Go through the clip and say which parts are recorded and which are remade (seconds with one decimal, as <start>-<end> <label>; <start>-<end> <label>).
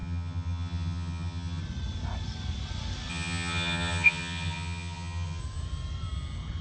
0.0-1.6 remade; 1.6-3.1 recorded; 3.1-5.4 remade; 5.4-6.6 recorded